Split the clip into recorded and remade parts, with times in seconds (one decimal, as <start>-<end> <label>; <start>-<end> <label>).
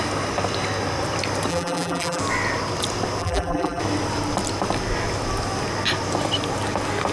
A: 0.0-1.5 recorded; 1.5-2.2 remade; 2.2-3.2 recorded; 3.2-3.8 remade; 3.8-7.1 recorded